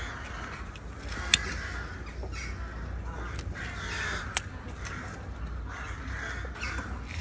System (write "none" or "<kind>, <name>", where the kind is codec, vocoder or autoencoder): none